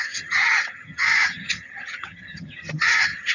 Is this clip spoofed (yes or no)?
yes